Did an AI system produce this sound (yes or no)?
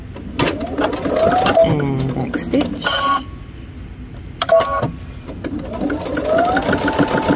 no